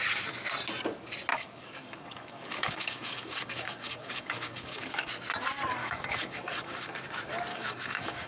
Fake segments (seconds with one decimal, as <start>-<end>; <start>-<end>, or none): 1.3-5.1; 5.8-7.0; 7.5-8.3